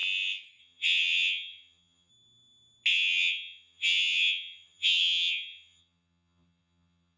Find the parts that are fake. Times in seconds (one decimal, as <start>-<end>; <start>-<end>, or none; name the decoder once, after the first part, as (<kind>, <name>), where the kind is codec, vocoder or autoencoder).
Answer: 0.6-2.1 (vocoder, HiFi-GAN); 2.9-7.2